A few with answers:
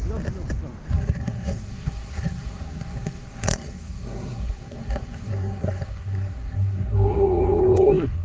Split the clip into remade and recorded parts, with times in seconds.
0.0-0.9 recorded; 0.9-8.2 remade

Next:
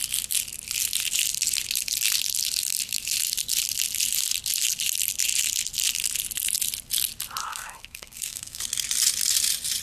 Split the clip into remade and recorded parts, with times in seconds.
0.0-7.4 recorded; 7.4-8.6 remade; 8.6-9.8 recorded

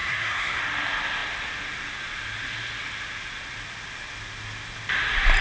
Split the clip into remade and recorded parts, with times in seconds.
0.0-0.6 remade; 0.6-5.4 recorded